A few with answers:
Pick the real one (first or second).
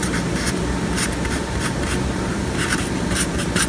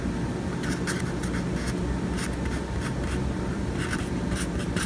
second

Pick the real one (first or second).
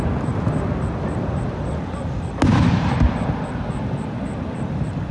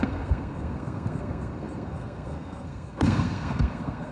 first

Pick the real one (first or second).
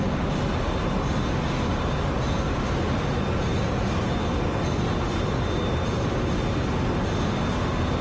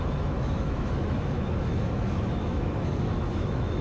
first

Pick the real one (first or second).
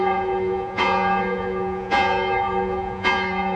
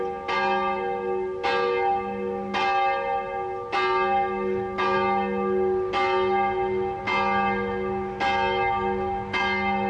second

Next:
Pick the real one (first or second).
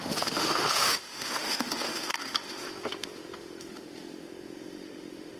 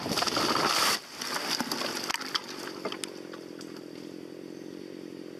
second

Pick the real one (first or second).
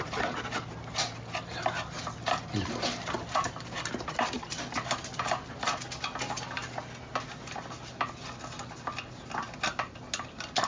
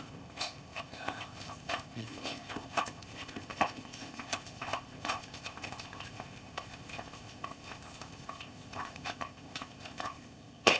first